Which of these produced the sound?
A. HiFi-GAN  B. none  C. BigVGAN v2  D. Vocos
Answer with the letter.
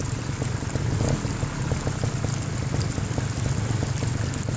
B